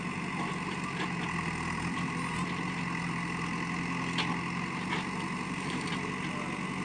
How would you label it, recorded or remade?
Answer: recorded